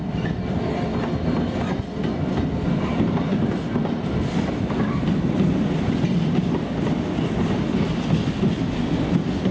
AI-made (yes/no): no